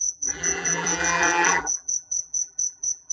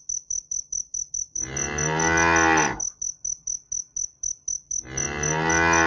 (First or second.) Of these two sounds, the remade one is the first